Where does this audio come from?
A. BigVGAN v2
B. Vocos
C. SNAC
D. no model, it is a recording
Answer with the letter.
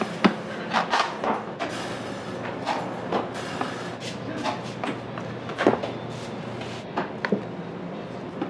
D